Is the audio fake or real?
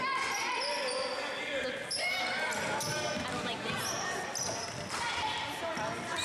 real